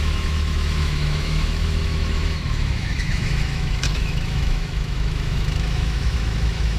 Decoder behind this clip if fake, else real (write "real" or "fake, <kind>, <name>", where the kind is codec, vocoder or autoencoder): fake, autoencoder, DAC-VAE